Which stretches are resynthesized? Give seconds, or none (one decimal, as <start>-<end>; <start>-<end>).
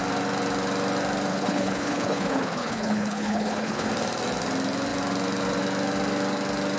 1.3-3.9